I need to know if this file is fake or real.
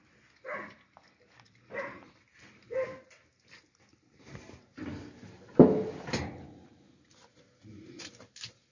real